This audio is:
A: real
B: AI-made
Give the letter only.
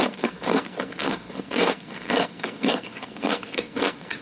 B